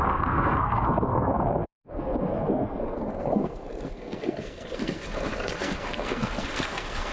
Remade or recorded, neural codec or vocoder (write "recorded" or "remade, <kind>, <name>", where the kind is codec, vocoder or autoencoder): remade, codec, SNAC